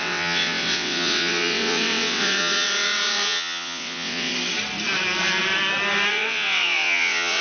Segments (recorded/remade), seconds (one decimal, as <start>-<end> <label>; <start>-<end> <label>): 0.0-4.3 remade; 4.3-6.1 recorded; 6.1-7.4 remade